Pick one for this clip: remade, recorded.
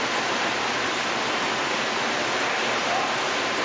recorded